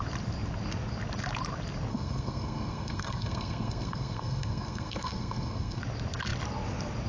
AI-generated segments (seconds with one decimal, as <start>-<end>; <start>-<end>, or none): 1.9-5.8